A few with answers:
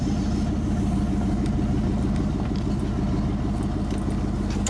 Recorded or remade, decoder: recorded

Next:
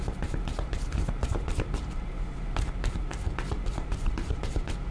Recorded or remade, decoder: remade, vocoder, BigVGAN v2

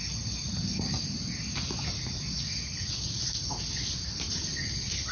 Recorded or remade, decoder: recorded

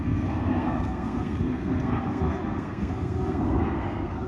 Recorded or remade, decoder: remade, codec, SNAC